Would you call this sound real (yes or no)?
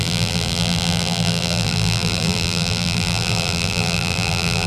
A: no